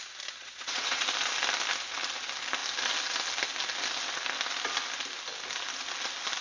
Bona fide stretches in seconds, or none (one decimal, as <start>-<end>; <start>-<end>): 0.0-0.4; 1.0-6.4